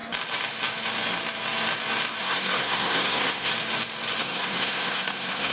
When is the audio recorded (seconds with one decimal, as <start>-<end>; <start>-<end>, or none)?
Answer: 0.0-2.2; 3.5-4.2